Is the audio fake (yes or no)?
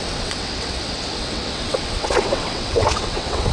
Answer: yes